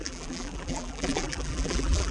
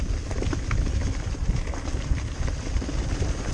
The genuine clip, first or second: second